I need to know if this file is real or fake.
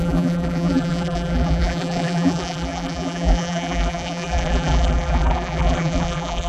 fake